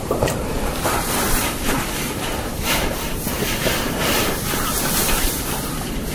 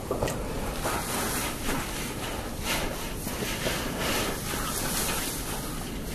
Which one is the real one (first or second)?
second